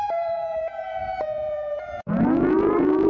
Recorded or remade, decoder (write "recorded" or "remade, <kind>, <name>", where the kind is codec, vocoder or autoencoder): remade, vocoder, Vocos